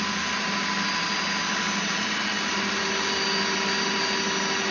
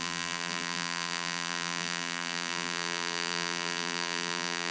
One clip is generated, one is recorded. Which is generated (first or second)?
second